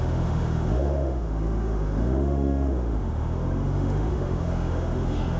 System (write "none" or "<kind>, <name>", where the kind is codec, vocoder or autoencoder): autoencoder, DAC-VAE